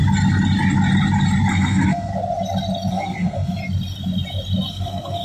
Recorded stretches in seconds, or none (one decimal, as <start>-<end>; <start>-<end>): 0.0-1.5; 2.1-2.9; 3.6-4.7